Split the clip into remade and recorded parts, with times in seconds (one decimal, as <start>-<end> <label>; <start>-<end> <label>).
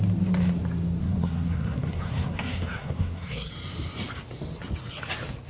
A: 0.0-1.0 recorded; 1.0-3.5 remade; 3.5-5.5 recorded